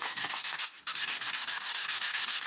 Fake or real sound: fake